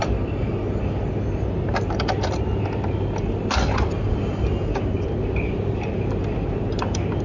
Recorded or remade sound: recorded